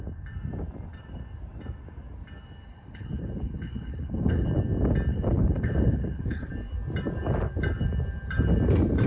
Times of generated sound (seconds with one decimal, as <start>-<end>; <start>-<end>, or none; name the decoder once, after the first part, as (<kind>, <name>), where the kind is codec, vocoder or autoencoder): 2.7-4.5 (codec, HILCodec); 5.1-6.5